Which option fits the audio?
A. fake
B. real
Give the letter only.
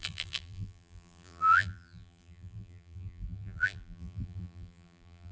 A